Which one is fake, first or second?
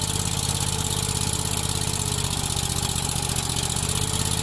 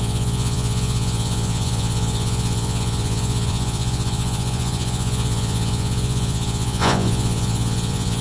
second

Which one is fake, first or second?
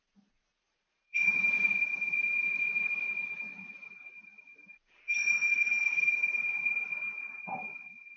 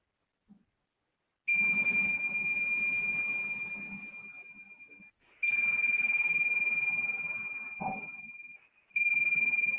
first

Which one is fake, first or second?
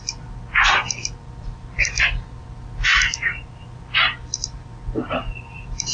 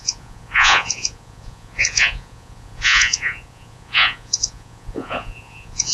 second